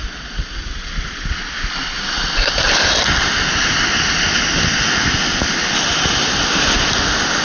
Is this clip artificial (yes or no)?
no